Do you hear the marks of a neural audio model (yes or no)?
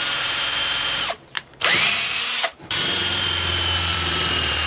yes